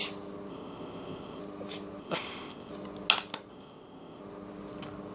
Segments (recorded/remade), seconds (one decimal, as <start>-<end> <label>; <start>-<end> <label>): 0.0-0.5 recorded; 0.5-1.4 remade; 1.4-2.0 recorded; 2.0-2.7 remade; 2.7-3.5 recorded; 3.5-4.2 remade; 4.2-5.1 recorded